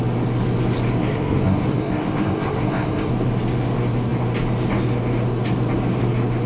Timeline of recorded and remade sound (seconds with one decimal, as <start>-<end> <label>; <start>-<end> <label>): 0.0-1.0 recorded; 1.0-3.1 remade; 3.1-6.5 recorded